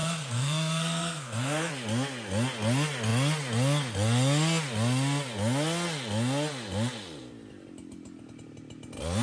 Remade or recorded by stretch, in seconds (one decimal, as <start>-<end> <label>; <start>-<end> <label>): 0.0-1.7 remade; 1.7-9.2 recorded